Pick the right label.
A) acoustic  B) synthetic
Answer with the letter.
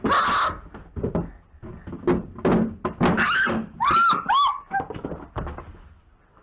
A